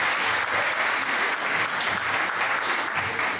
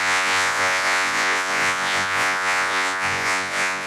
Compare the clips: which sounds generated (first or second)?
second